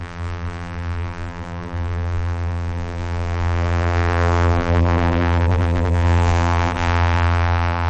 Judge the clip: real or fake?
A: fake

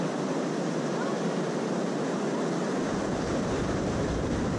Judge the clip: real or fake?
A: real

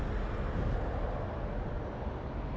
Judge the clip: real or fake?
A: real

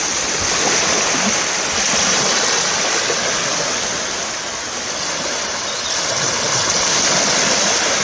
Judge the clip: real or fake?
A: real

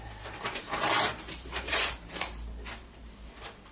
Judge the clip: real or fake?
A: fake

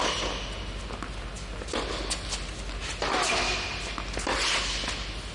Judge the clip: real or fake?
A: real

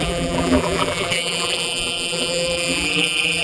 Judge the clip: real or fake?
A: fake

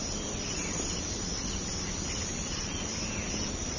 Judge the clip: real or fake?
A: real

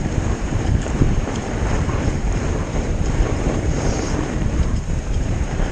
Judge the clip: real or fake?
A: fake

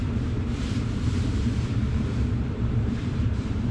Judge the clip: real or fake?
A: fake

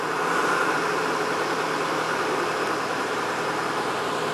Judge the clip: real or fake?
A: fake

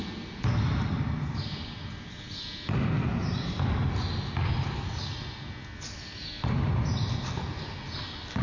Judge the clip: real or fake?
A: real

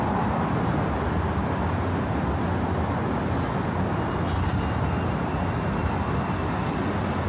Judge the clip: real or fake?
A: real